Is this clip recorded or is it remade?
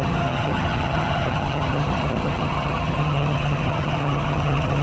remade